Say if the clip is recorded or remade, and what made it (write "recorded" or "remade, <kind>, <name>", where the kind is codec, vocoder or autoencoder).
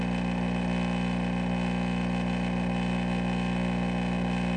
recorded